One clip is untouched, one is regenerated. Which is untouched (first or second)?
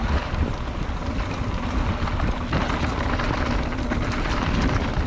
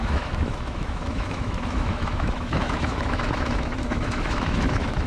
first